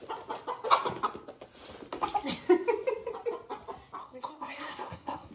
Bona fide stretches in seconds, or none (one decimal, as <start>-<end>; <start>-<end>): 0.0-4.0

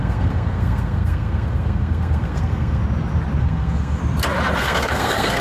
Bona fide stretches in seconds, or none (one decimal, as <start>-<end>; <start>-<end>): 2.8-3.4; 4.0-4.6

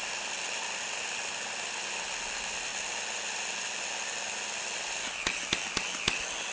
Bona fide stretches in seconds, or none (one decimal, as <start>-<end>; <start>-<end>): 0.0-6.5

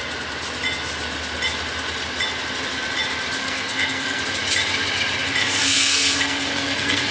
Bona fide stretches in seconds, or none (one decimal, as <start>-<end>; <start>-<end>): 0.0-3.4; 4.2-5.4

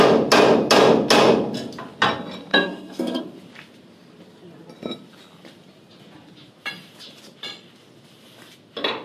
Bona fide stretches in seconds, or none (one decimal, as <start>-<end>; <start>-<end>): 0.0-2.5; 3.2-9.0

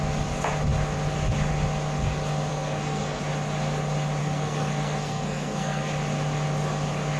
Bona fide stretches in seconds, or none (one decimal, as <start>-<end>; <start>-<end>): 0.0-2.5; 3.2-4.2; 5.9-7.2